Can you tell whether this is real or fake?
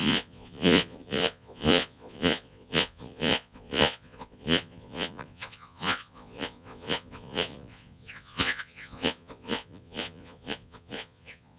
fake